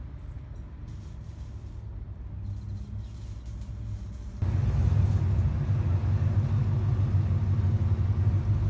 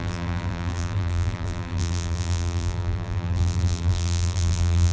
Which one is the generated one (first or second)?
second